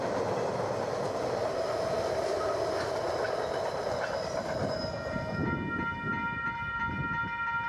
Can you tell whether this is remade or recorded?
recorded